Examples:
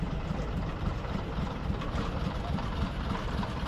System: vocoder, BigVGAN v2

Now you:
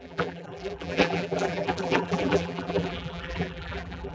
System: vocoder, BigVGAN v2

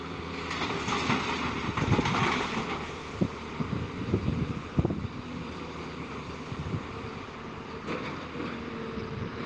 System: vocoder, BigVGAN v2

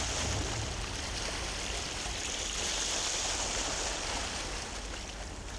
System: none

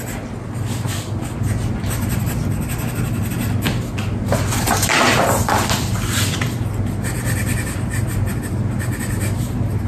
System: none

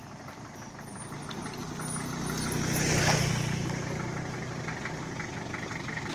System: none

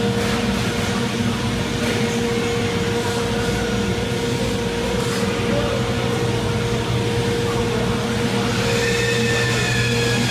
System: none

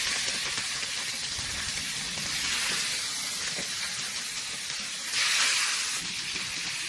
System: none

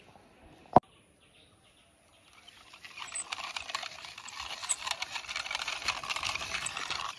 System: vocoder, BigVGAN v2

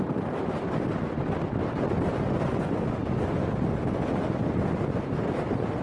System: none